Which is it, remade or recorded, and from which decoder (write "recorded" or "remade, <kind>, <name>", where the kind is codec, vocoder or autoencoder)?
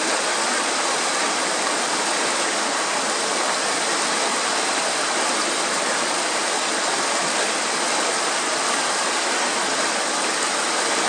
recorded